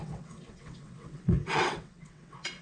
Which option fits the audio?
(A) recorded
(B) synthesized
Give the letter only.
B